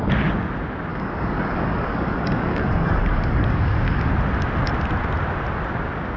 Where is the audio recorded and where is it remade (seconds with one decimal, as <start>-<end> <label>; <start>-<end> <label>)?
0.0-0.9 recorded; 0.9-4.1 remade; 4.1-6.2 recorded